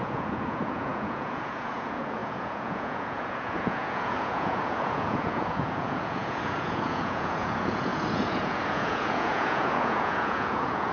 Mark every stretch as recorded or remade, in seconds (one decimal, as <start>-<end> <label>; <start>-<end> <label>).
0.0-10.9 remade